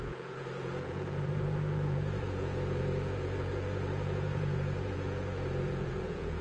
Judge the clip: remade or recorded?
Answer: remade